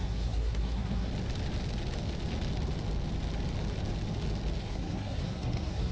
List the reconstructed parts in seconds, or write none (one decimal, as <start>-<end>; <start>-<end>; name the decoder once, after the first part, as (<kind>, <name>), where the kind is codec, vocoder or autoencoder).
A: 0.0-1.1 (codec, SNAC); 4.6-5.9